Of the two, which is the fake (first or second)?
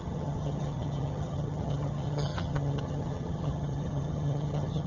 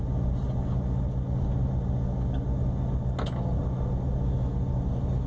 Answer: first